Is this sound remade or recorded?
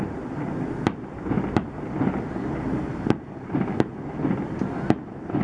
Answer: recorded